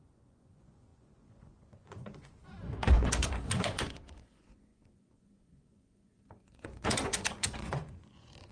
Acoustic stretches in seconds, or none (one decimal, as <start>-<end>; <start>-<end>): none